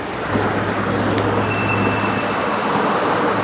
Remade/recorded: recorded